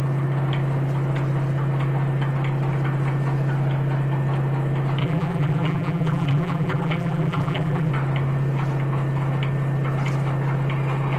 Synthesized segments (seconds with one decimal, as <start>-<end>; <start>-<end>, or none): 5.0-7.9